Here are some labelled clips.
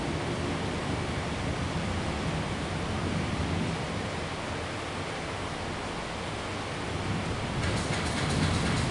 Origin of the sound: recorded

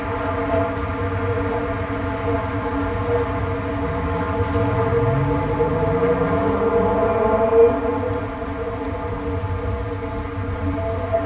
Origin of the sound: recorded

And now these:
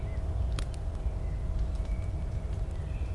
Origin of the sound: recorded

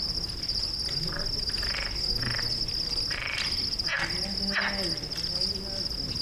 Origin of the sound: recorded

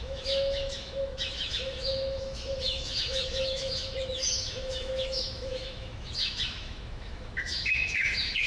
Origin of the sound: remade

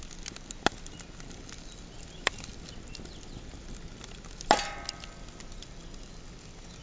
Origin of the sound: recorded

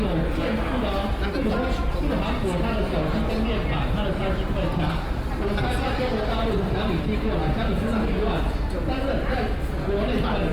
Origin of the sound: recorded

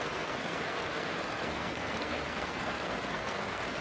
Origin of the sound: remade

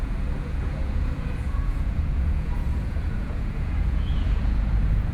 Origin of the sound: remade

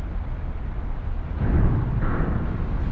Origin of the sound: remade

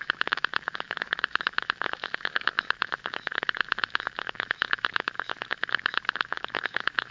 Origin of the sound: remade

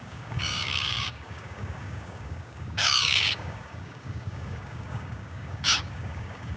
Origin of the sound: remade